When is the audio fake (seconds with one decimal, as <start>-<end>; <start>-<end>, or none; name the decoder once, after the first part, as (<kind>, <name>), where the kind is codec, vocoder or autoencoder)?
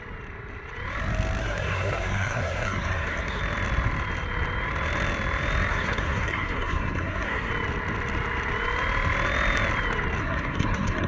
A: 1.4-3.4 (codec, SNAC); 5.7-7.5; 10.2-11.1